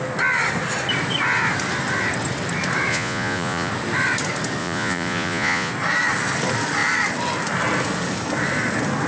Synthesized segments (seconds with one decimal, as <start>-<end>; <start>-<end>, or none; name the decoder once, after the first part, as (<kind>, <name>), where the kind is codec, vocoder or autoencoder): 2.9-3.7 (vocoder, Vocos); 4.6-5.7